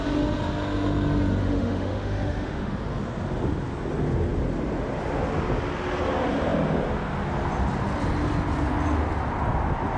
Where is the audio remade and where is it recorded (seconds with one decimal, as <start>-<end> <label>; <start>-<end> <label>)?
0.0-1.4 recorded; 1.4-2.7 remade; 2.7-10.0 recorded